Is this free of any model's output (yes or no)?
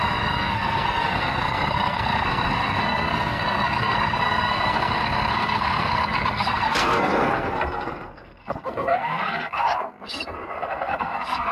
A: no